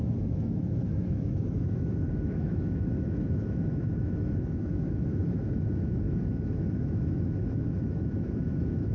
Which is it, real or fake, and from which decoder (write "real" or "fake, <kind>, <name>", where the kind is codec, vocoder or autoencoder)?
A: fake, autoencoder, DAC-VAE